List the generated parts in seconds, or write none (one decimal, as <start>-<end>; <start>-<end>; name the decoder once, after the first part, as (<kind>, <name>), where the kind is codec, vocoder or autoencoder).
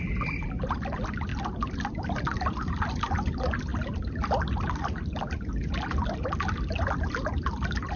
none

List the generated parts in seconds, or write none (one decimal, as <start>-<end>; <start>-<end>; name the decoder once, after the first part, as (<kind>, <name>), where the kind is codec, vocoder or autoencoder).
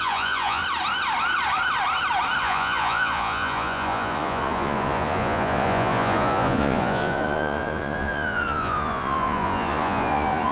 0.0-0.6 (vocoder, Vocos); 2.4-10.5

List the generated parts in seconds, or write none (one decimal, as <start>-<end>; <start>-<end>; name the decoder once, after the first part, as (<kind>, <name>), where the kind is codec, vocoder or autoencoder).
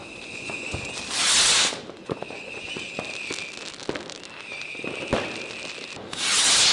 0.0-0.9 (vocoder, Vocos); 2.0-2.9